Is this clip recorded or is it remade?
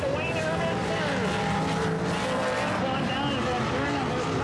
recorded